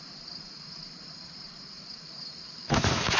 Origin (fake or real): fake